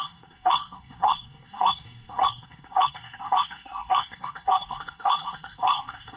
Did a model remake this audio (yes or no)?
yes